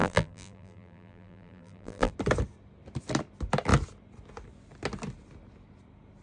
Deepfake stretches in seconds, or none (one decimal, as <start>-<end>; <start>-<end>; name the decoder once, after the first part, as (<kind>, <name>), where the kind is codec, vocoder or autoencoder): 0.0-2.1 (vocoder, BigVGAN v2)